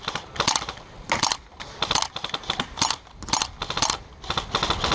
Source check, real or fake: real